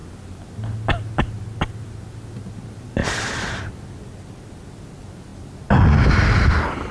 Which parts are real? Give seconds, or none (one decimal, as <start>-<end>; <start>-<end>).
0.0-6.9